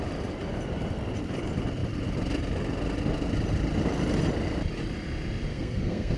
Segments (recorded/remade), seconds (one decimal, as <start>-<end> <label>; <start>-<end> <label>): 0.0-5.5 recorded; 5.5-6.2 remade